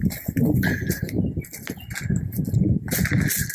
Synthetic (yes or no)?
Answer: no